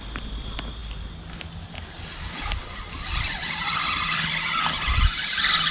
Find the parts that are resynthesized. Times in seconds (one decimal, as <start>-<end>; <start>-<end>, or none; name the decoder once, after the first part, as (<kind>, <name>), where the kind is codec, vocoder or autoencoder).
none